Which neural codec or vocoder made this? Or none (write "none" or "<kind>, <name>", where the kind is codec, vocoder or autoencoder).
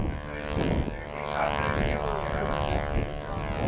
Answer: none